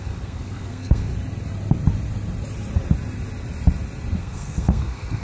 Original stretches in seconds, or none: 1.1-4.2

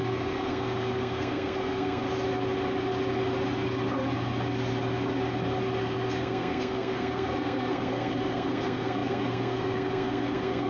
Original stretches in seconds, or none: 2.0-5.8

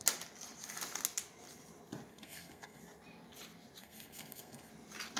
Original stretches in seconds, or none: 0.0-2.1; 2.8-3.8; 4.7-5.2

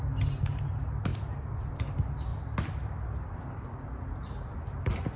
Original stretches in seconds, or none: 0.0-5.2

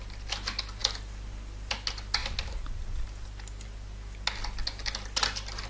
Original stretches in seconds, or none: 0.0-5.7

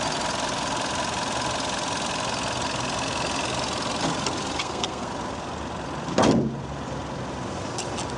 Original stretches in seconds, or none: 0.0-4.6; 5.1-8.2